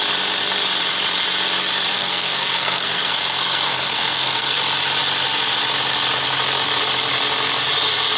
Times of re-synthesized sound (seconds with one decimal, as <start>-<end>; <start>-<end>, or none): 1.9-4.6